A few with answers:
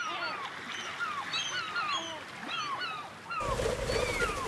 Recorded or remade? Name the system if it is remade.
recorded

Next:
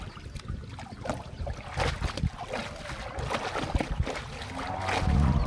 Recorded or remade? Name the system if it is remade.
recorded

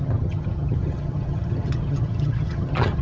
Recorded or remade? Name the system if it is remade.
remade, vocoder, HiFi-GAN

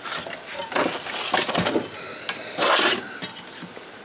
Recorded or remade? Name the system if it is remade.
recorded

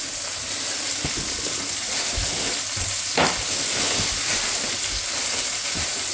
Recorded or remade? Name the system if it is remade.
recorded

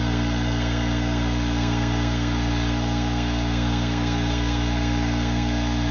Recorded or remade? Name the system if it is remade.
remade, codec, SNAC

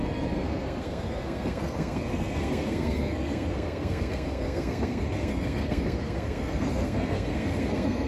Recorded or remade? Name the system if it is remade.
remade, codec, SNAC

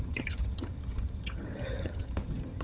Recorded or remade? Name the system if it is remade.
remade, vocoder, HiFi-GAN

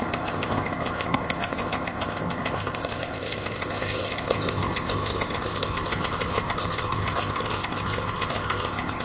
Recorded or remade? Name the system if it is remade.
remade, codec, ZipCodec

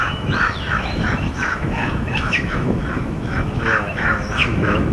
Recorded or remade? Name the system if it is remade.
remade, autoencoder, DAC-VAE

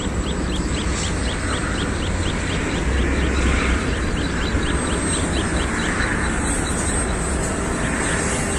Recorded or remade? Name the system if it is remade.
recorded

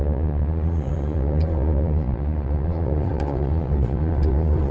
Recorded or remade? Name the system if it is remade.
remade, vocoder, Vocos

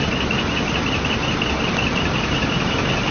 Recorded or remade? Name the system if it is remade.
recorded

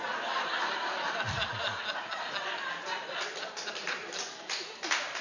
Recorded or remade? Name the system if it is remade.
recorded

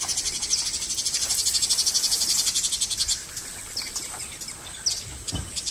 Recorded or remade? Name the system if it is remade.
recorded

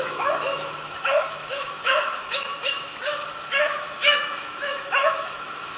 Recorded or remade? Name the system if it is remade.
remade, autoencoder, DAC-VAE